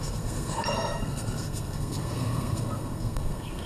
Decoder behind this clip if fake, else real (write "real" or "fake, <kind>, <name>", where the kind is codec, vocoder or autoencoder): fake, codec, SNAC